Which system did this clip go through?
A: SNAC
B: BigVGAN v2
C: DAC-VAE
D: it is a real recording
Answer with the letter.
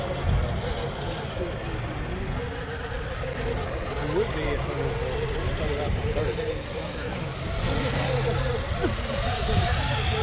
D